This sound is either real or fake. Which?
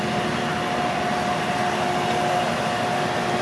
real